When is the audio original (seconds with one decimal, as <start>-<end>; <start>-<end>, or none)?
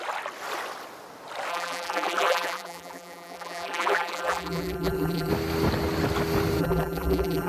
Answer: 0.0-1.5; 5.3-6.6